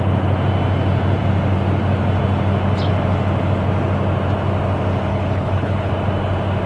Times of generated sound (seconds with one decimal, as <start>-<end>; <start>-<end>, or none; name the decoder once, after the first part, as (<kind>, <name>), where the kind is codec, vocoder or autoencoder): 5.1-5.9 (codec, HILCodec)